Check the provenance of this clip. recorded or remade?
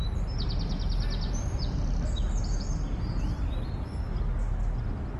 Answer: recorded